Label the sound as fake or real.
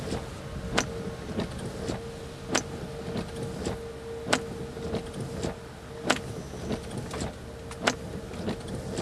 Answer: real